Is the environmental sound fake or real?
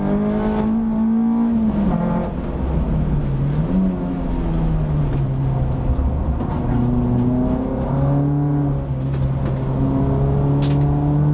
real